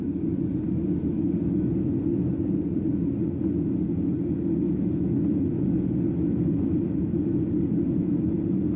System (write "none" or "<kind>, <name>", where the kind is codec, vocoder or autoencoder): none